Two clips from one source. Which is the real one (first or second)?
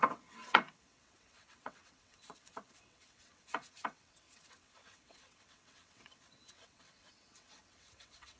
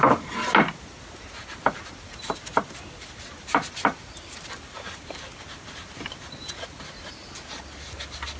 second